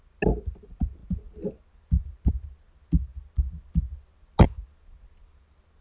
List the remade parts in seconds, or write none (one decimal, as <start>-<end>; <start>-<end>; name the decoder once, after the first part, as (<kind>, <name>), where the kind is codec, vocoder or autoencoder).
none